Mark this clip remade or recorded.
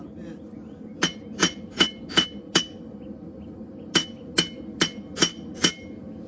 recorded